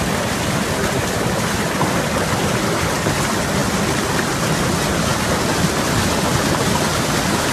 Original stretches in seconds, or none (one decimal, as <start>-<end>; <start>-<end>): 0.0-7.5